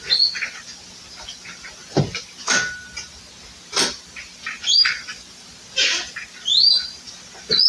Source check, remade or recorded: recorded